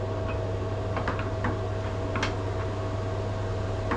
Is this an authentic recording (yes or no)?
yes